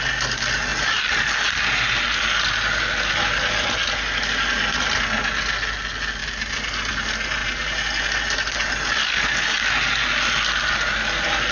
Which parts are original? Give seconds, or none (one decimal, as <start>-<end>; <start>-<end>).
0.0-11.5